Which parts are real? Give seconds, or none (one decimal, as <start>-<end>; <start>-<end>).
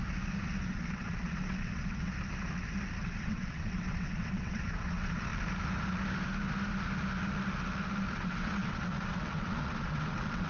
0.0-0.7; 2.1-3.0; 5.3-8.0